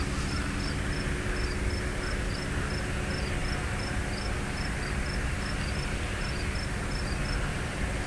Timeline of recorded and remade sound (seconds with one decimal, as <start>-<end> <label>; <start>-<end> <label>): 0.0-7.5 recorded; 7.5-8.1 remade